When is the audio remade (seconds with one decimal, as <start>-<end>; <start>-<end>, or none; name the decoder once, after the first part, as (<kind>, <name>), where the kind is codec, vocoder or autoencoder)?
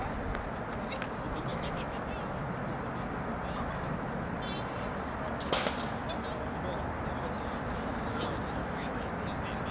1.5-2.0 (autoencoder, DAC-VAE); 8.6-9.1